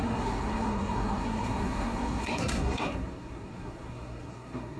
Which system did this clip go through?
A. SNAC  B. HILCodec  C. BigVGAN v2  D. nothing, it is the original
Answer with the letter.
A